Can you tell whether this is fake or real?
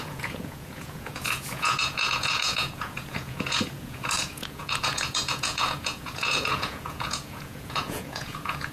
fake